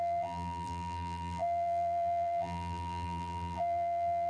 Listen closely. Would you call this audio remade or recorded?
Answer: remade